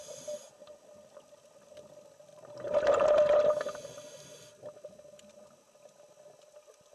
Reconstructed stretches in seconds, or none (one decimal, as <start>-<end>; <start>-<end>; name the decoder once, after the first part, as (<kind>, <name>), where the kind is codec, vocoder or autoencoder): none